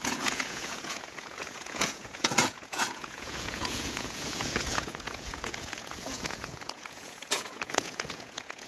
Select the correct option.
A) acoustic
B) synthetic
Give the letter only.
B